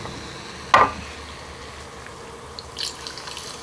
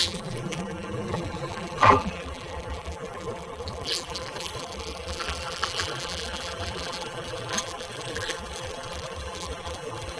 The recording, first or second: first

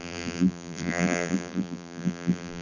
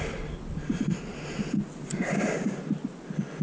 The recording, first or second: second